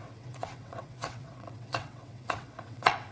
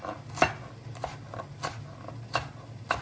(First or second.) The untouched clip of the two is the second